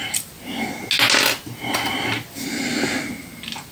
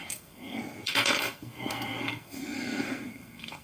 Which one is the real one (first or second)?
first